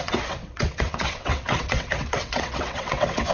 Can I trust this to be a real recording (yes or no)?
no